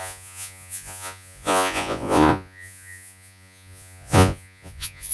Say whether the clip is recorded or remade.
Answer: remade